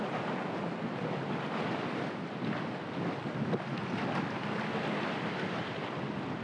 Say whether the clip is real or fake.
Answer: real